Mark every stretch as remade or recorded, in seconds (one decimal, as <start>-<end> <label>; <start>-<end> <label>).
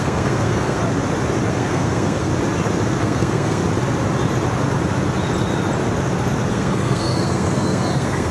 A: 0.0-0.8 remade; 0.8-1.5 recorded; 1.5-2.3 remade; 2.3-3.0 recorded; 3.0-3.6 remade; 3.6-6.5 recorded; 6.5-8.3 remade